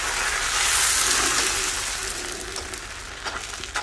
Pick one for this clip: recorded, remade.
recorded